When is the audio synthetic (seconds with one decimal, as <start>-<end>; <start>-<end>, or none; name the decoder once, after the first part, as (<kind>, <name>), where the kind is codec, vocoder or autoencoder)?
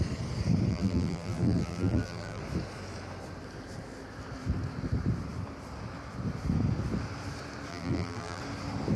0.7-2.4 (vocoder, BigVGAN v2); 7.7-8.4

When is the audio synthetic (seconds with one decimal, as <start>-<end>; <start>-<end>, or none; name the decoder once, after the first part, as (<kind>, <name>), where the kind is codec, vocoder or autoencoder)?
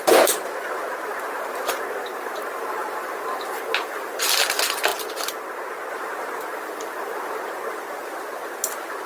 1.1-4.2 (vocoder, BigVGAN v2); 6.5-7.4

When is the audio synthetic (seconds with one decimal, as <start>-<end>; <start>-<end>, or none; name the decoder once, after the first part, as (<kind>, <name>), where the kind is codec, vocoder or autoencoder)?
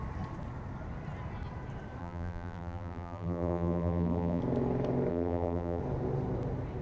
2.0-4.4 (vocoder, BigVGAN v2); 5.1-5.8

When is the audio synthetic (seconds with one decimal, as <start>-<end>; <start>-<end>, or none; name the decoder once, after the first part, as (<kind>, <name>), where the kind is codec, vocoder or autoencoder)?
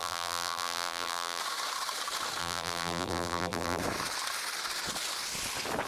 0.0-1.4 (vocoder, BigVGAN v2); 2.4-3.8